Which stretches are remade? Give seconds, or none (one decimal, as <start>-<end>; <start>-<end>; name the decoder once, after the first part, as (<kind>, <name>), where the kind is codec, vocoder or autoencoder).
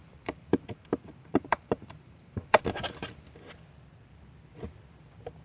0.0-3.2 (vocoder, BigVGAN v2)